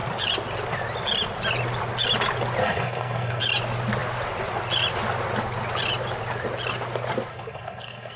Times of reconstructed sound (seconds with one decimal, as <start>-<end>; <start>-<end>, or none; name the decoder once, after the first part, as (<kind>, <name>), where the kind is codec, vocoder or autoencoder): 2.6-3.4 (codec, SNAC); 7.3-8.2